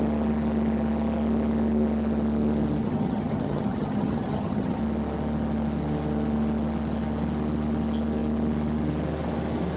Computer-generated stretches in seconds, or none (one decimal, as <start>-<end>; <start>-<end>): 2.8-4.8